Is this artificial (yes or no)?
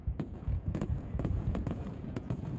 yes